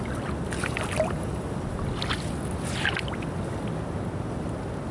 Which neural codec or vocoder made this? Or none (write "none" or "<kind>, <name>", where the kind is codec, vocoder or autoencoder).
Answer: none